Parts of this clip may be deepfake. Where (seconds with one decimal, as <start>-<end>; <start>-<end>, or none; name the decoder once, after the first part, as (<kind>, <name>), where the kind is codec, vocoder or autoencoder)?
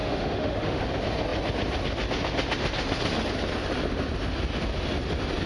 0.0-0.8 (autoencoder, DAC-VAE)